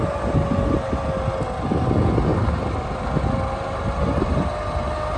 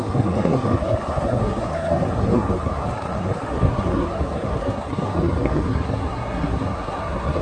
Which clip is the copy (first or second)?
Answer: second